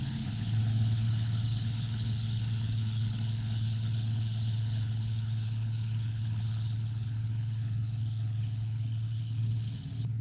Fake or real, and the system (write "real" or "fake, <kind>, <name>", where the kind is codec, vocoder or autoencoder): fake, codec, HILCodec